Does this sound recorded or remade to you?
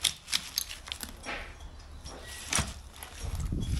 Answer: recorded